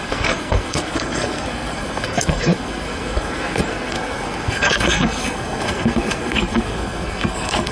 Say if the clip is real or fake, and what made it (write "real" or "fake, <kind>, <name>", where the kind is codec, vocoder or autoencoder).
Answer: fake, codec, SNAC